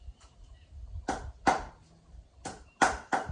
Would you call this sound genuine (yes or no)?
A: yes